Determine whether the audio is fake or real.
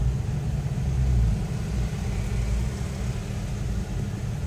real